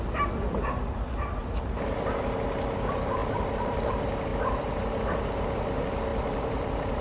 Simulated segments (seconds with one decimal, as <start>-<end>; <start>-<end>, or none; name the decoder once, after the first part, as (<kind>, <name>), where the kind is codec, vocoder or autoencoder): 1.4-2.1 (vocoder, BigVGAN v2); 3.2-3.9; 4.3-4.8; 6.1-7.0